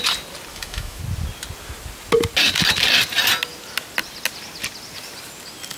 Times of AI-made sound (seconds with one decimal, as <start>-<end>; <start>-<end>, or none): 0.5-1.0